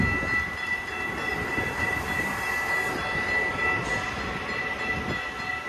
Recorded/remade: recorded